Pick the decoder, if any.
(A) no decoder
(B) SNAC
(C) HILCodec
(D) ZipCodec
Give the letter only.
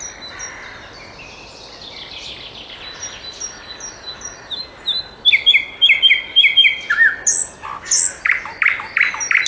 A